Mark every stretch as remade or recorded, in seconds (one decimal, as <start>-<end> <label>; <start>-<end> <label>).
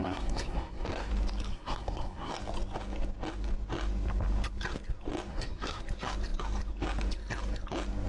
0.0-1.1 remade; 1.1-1.5 recorded; 1.5-2.3 remade; 2.3-5.3 recorded; 5.3-5.8 remade; 5.8-8.1 recorded